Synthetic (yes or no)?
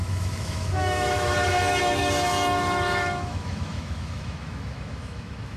yes